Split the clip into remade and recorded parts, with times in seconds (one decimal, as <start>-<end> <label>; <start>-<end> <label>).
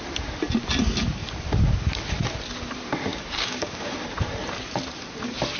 0.0-3.1 recorded; 3.1-3.9 remade; 3.9-5.6 recorded